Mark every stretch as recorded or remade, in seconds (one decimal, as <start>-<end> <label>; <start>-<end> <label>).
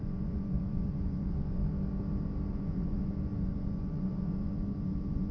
0.0-1.6 remade; 1.6-2.5 recorded; 2.5-5.3 remade